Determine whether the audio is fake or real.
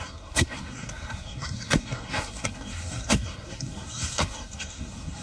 fake